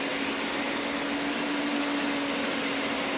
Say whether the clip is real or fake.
real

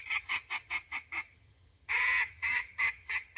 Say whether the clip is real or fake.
fake